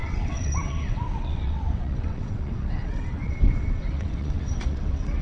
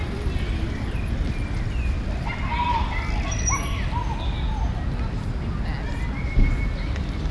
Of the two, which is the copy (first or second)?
first